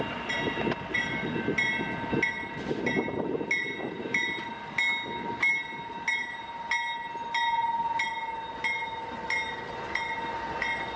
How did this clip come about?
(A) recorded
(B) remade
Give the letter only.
A